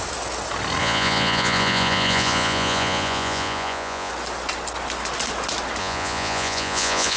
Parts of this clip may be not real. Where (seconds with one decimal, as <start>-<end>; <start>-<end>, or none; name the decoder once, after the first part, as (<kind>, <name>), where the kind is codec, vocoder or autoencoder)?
0.8-4.1 (vocoder, Vocos); 5.8-7.2